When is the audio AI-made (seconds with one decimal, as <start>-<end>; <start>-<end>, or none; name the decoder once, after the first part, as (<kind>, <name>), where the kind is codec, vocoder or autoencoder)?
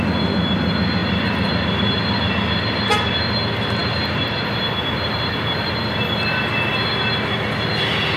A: none